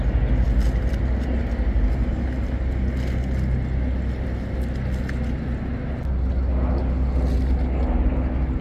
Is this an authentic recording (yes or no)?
yes